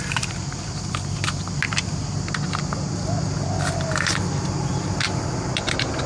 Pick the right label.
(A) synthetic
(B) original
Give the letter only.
B